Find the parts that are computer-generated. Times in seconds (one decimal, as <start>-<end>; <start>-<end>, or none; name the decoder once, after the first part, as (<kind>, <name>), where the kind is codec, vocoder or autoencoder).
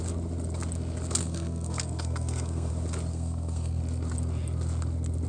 1.2-2.7 (codec, SNAC); 3.1-3.8